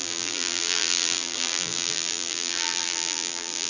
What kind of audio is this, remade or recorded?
remade